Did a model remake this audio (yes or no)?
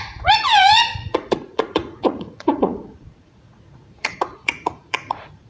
yes